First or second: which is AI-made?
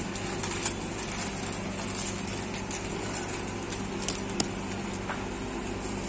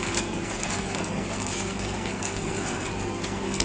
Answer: second